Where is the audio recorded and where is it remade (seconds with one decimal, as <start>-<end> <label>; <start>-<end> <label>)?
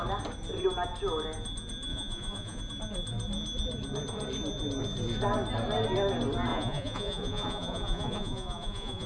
0.0-1.9 recorded; 1.9-2.6 remade; 2.6-6.5 recorded; 6.5-9.1 remade